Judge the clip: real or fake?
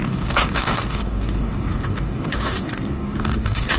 fake